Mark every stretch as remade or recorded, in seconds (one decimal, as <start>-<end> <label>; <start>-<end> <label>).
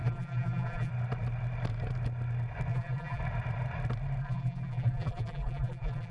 0.0-0.9 remade; 0.9-2.7 recorded; 2.7-3.2 remade; 3.2-4.2 recorded; 4.2-6.1 remade